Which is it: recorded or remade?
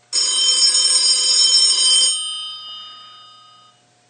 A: recorded